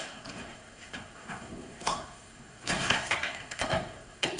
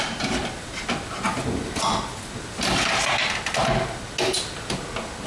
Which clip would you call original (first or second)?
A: second